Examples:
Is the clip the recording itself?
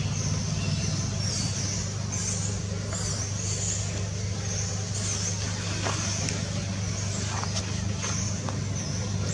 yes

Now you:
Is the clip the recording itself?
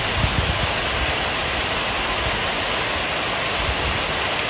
yes